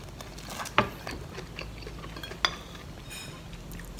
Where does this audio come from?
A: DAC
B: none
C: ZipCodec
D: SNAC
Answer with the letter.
B